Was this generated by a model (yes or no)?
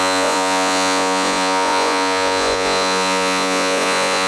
yes